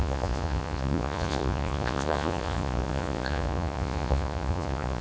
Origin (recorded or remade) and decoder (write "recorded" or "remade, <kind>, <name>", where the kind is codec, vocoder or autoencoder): remade, vocoder, Vocos